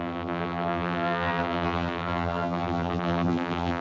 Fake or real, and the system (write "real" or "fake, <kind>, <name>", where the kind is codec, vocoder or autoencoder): fake, vocoder, BigVGAN v2